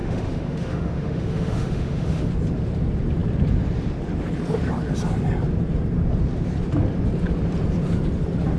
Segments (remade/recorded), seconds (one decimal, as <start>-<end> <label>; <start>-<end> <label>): 0.0-2.3 remade; 2.3-8.6 recorded